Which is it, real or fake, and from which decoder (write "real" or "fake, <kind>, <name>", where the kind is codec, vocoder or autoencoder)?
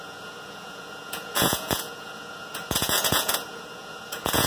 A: fake, vocoder, Vocos